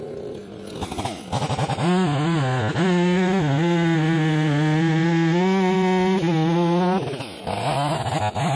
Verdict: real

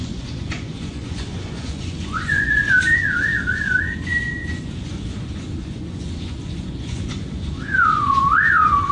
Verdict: fake